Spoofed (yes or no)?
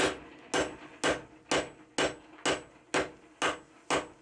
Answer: no